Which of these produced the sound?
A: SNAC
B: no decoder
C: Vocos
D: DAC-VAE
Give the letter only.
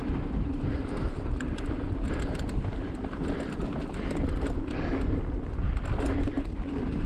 B